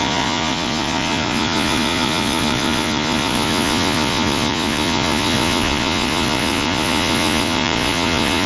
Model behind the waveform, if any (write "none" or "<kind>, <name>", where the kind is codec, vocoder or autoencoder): vocoder, Vocos